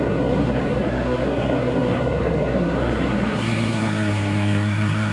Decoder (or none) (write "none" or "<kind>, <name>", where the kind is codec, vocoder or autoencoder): codec, SNAC